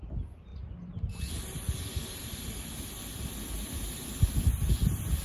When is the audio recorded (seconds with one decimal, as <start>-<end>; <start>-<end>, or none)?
0.0-5.2